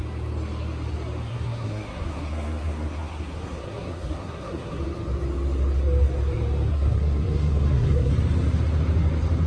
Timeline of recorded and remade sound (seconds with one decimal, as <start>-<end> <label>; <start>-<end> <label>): 0.0-1.3 recorded; 1.3-4.8 remade; 4.8-6.7 recorded; 6.7-8.1 remade; 8.1-9.5 recorded